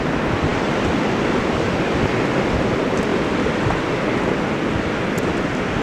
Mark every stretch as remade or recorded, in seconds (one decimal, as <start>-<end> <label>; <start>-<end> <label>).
0.0-5.8 recorded